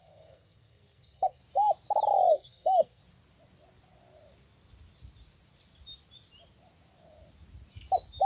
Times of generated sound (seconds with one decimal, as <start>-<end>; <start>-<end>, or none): 0.0-1.4; 2.3-3.0